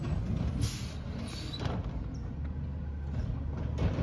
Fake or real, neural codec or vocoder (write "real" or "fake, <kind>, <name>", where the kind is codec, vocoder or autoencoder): real